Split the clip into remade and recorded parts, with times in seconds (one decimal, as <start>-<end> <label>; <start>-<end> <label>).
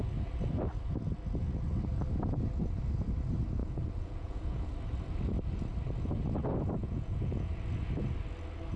0.0-3.6 recorded; 3.6-4.7 remade; 4.7-6.8 recorded; 6.8-7.5 remade; 7.5-8.8 recorded